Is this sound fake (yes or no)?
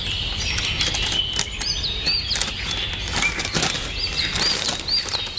no